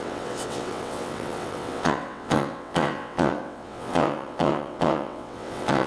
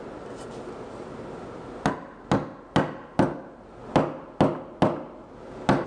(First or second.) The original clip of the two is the second